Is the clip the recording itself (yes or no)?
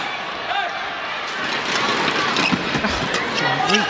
yes